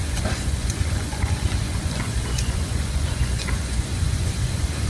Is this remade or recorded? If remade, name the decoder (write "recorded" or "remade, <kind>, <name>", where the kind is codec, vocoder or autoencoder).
remade, vocoder, Vocos